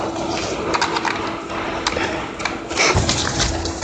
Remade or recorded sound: recorded